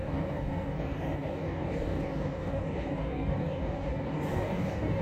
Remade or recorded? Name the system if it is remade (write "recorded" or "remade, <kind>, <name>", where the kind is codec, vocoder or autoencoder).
remade, codec, DAC